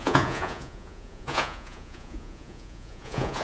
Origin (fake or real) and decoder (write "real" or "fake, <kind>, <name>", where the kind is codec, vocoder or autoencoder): fake, vocoder, Vocos